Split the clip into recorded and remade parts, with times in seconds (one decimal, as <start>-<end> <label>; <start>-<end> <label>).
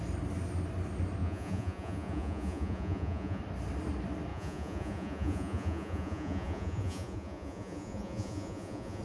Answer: 0.0-1.2 recorded; 1.2-3.4 remade; 3.4-4.3 recorded; 4.3-9.0 remade